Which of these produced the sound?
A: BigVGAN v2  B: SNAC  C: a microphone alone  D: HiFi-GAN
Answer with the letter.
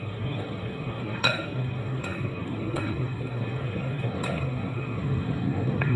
B